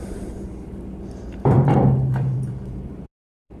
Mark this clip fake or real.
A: fake